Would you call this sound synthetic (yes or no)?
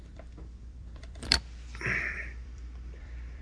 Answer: yes